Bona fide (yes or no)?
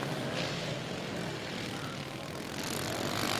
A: yes